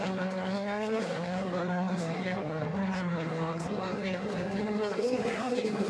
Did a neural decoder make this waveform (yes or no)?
yes